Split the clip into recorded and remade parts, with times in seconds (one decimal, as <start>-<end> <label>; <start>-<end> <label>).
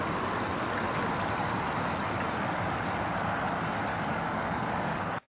0.0-3.9 recorded; 3.9-5.4 remade